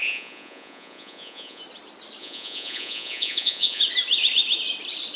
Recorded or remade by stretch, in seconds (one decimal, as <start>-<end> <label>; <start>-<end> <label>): 0.0-1.6 remade; 1.6-2.2 recorded; 2.2-3.8 remade; 3.8-5.2 recorded